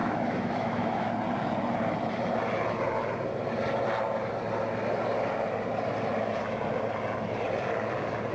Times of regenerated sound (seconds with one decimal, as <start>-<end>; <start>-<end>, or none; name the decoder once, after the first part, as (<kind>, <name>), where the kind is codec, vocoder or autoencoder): 0.0-1.1 (autoencoder, DAC-VAE)